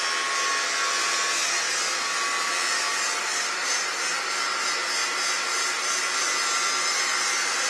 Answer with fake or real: real